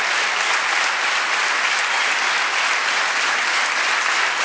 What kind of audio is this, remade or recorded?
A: recorded